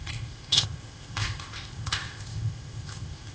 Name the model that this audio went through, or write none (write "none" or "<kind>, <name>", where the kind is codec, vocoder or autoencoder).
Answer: codec, ZipCodec